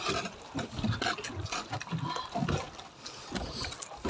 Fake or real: real